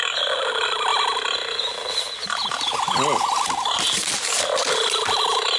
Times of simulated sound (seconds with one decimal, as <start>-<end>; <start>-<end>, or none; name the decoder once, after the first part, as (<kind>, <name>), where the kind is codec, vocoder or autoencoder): none